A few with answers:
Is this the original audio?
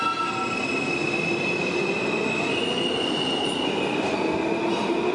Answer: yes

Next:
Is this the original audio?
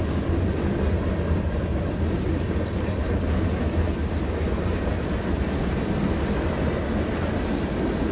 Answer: yes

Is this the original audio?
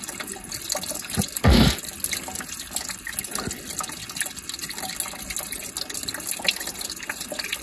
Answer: yes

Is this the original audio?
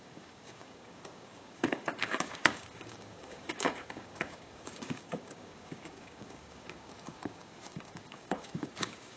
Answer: no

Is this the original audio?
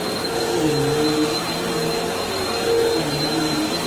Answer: yes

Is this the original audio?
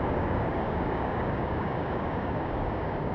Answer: no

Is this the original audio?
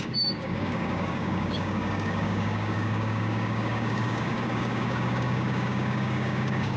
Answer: no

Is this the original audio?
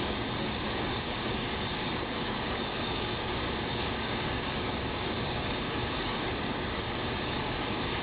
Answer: no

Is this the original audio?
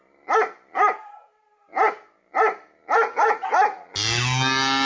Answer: yes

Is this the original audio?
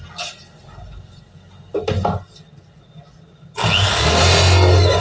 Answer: yes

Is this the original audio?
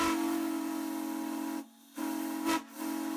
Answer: yes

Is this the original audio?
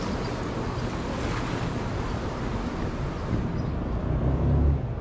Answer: yes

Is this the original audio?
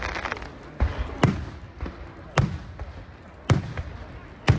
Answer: yes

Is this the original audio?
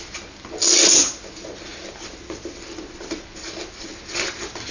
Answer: yes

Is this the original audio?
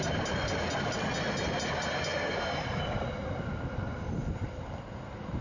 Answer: yes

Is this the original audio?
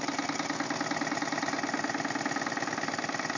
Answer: yes